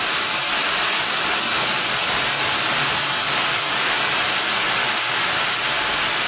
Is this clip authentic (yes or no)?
yes